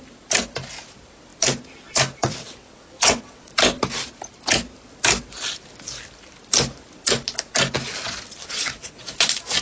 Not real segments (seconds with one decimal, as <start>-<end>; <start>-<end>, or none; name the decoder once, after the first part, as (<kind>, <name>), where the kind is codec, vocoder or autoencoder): 2.2-3.5 (vocoder, WaveNeXt); 8.4-9.0